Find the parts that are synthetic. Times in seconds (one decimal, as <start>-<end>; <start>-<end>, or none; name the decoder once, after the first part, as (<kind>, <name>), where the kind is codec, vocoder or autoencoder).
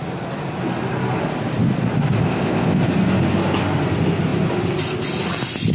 2.2-2.8 (codec, ZipCodec)